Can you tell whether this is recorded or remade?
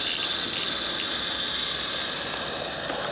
recorded